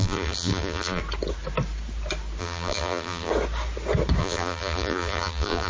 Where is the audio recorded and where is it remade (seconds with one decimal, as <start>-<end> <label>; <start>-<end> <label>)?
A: 0.0-1.0 remade; 1.0-2.4 recorded; 2.4-3.3 remade; 3.3-4.2 recorded; 4.2-5.7 remade